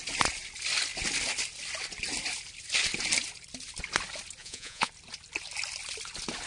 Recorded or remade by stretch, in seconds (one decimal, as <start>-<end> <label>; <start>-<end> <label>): 0.0-4.4 recorded; 4.4-4.9 remade; 4.9-6.5 recorded